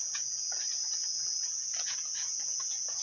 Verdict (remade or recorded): remade